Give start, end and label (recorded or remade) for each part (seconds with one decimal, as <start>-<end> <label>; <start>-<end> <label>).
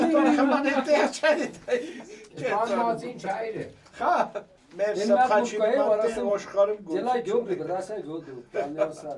0.0-9.2 recorded